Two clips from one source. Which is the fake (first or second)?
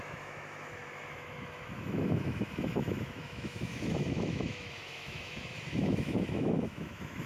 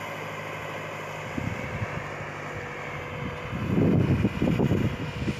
first